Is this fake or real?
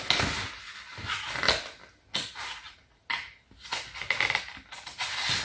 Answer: real